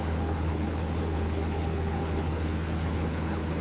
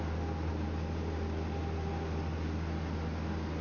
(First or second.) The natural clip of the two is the second